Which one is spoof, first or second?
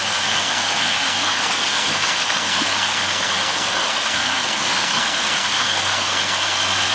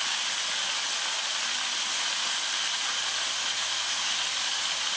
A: first